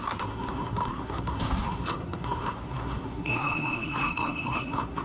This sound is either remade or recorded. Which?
remade